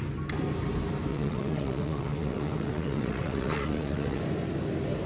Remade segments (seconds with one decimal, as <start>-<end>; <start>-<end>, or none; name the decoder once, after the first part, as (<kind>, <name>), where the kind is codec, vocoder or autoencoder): 1.1-4.2 (vocoder, WaveNeXt)